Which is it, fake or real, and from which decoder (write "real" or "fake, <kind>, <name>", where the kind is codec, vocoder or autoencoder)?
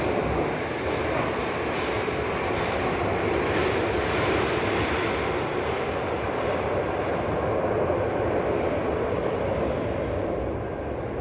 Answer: real